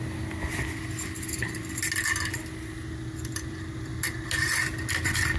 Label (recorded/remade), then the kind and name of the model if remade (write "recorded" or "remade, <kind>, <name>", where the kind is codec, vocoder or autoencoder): recorded